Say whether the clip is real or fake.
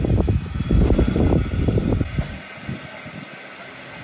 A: real